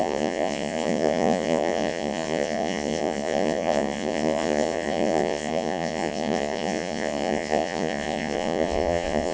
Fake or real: fake